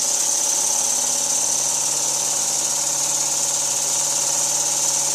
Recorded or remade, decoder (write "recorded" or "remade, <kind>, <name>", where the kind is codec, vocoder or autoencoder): recorded